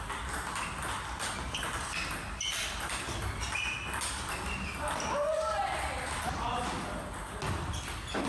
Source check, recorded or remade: recorded